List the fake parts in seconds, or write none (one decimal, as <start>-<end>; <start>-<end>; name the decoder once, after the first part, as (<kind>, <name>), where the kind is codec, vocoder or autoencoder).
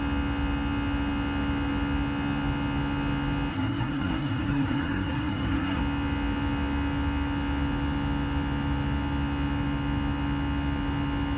3.5-5.8 (codec, SNAC)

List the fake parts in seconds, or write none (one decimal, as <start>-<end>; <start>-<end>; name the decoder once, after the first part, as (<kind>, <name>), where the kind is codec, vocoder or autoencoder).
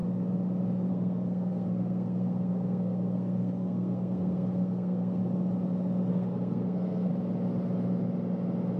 0.9-5.2 (codec, SNAC); 6.1-7.1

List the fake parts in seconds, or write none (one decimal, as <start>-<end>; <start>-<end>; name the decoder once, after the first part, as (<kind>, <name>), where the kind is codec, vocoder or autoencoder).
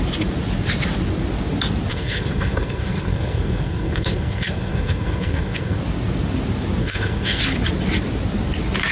1.9-5.8 (codec, SNAC); 6.8-7.4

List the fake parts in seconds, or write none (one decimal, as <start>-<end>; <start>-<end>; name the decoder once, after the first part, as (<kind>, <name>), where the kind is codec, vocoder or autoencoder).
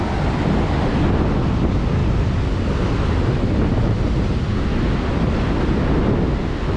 none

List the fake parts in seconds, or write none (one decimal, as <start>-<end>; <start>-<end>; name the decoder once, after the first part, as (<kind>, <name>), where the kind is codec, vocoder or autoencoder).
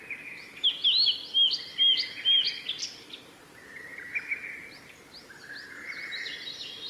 none